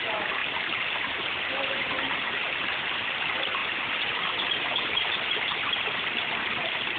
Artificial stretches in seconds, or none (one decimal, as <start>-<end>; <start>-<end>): none